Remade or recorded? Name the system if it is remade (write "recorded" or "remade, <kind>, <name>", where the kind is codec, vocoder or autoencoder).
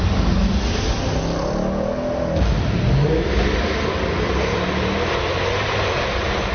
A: recorded